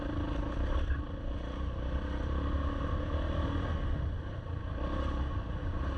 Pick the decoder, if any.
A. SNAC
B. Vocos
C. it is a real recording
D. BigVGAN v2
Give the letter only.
C